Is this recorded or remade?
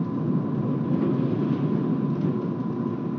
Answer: recorded